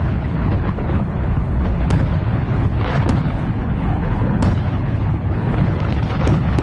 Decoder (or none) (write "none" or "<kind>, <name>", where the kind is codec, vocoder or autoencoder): codec, HILCodec